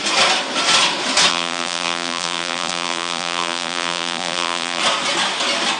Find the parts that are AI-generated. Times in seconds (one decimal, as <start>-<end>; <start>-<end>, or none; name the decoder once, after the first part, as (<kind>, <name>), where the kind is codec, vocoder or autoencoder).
1.3-4.8 (vocoder, BigVGAN v2)